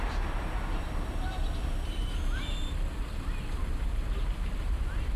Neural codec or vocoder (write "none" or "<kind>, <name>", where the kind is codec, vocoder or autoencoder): vocoder, BigVGAN v2